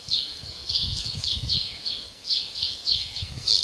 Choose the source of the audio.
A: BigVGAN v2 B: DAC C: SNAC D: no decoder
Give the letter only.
C